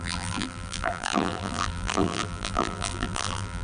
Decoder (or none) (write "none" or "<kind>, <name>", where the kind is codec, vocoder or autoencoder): vocoder, BigVGAN v2